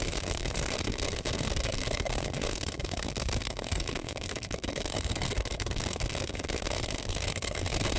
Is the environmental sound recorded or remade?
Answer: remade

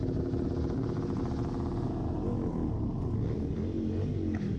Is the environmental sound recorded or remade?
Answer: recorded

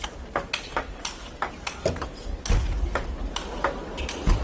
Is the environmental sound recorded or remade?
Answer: recorded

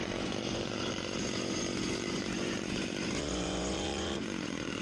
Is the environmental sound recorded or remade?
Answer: remade